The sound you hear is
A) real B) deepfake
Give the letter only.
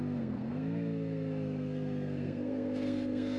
B